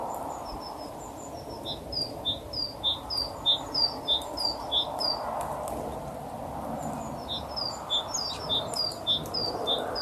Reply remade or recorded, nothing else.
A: recorded